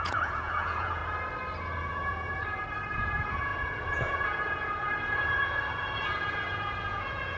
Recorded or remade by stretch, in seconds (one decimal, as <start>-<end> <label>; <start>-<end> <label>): 0.0-1.0 remade; 1.0-1.8 recorded; 1.8-2.4 remade; 2.4-2.9 recorded; 2.9-7.4 remade